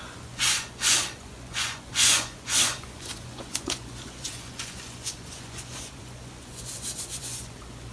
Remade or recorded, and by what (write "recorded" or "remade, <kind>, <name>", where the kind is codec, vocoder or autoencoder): remade, vocoder, Vocos